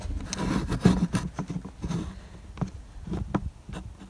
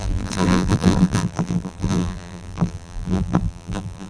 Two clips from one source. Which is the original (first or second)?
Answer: first